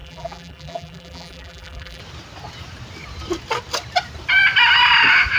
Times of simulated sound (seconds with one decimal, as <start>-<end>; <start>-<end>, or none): 0.0-2.0